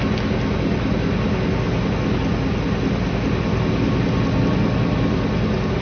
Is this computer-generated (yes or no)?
no